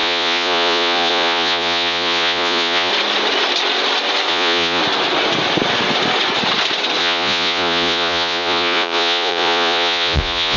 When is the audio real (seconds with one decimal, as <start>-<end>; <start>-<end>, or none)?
2.9-4.3; 4.8-7.0